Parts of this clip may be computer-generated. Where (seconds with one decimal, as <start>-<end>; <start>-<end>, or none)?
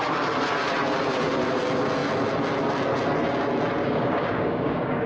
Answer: 3.8-5.1